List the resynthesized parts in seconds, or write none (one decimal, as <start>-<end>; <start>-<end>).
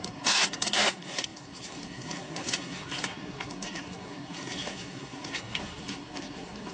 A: 0.0-6.7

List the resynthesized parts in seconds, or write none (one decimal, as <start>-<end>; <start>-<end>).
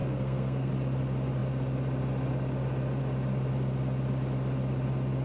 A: 0.0-0.7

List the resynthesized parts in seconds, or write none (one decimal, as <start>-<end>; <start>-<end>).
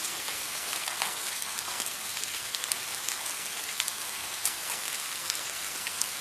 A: 0.0-6.2